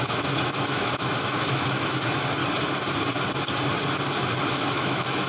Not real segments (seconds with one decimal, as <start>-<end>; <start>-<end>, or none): 0.0-2.4; 4.5-5.3